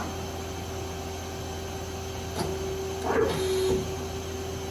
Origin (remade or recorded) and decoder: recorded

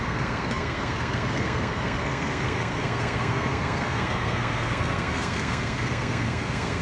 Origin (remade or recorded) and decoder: remade, codec, SNAC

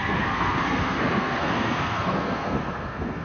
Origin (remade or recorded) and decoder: remade, codec, SNAC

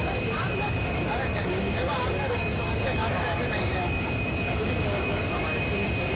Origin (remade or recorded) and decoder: remade, codec, DAC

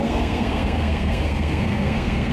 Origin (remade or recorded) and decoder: remade, codec, SNAC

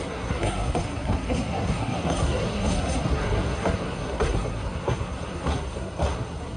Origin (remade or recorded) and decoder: remade, codec, SNAC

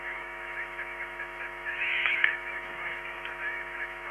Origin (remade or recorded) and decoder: remade, autoencoder, DAC-VAE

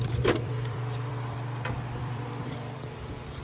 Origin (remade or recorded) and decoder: remade, vocoder, BigVGAN v2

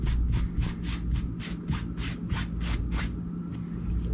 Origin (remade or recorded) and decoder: recorded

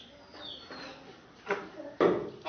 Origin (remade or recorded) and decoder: recorded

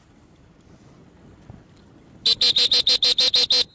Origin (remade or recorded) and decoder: recorded